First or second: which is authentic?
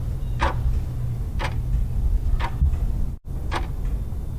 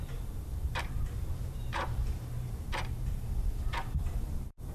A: first